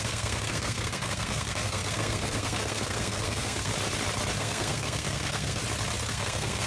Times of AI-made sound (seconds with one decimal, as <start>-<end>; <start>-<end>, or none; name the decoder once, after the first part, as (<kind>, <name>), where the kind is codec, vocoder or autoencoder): 0.0-3.7 (codec, SNAC); 4.4-5.6; 6.1-6.7